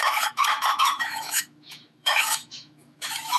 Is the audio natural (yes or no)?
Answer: no